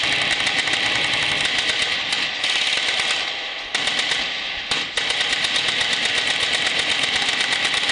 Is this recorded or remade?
recorded